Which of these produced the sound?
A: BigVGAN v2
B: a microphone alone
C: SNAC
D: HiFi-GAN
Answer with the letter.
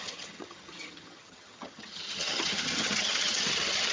D